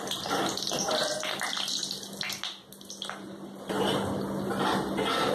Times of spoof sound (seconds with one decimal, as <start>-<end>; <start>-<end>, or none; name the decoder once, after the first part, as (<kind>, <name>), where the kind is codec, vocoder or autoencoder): none